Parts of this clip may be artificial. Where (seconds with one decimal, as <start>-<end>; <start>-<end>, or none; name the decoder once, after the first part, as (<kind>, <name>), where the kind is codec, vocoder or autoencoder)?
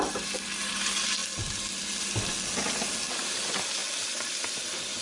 none